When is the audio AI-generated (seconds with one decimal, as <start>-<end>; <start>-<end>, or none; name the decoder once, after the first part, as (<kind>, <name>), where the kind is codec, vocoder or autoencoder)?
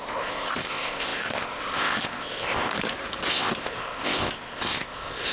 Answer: 0.0-2.7 (codec, ZipCodec); 3.3-5.3